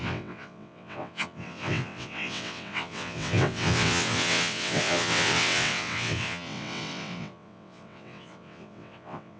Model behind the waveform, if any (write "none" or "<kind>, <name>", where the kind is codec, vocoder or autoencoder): vocoder, WaveNeXt